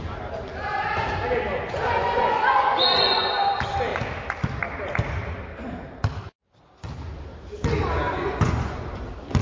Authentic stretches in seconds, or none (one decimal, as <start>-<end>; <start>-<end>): 0.0-1.5; 3.3-8.1; 9.0-9.4